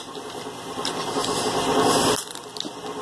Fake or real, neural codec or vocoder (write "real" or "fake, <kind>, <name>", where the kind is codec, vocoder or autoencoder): real